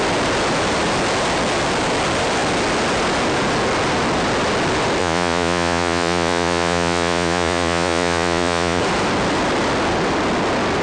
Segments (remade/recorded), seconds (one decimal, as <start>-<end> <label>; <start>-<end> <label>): 0.0-5.0 recorded; 5.0-8.8 remade; 8.8-10.8 recorded